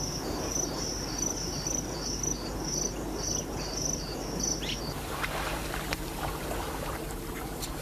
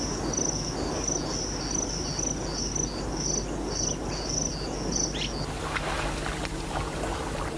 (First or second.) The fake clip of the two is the first